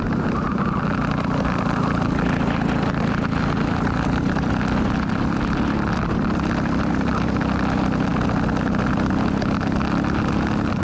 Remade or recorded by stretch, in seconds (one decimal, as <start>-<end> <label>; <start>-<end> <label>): 0.0-10.8 recorded